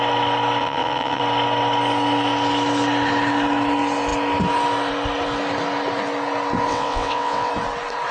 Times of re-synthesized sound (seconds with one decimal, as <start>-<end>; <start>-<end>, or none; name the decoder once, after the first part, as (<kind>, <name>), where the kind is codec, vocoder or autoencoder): 0.6-1.2 (vocoder, WaveNeXt); 6.7-7.5